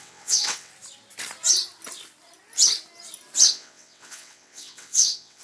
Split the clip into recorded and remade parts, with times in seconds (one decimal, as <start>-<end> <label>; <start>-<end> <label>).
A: 0.0-0.7 remade; 0.7-3.5 recorded; 3.5-5.4 remade